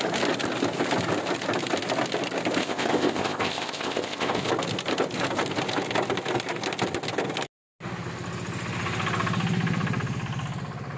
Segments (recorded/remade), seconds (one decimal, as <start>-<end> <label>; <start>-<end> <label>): 0.0-2.6 recorded; 2.6-4.5 remade; 4.5-11.0 recorded